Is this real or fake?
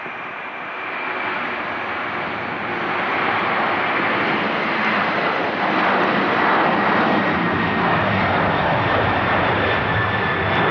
real